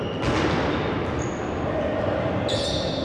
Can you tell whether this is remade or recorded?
recorded